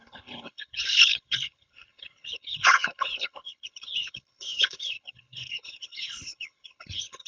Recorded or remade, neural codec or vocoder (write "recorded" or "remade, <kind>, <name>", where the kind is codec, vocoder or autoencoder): remade, codec, HILCodec